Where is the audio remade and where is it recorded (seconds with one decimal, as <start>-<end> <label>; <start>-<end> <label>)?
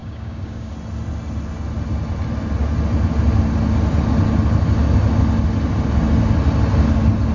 0.0-0.7 remade; 0.7-7.3 recorded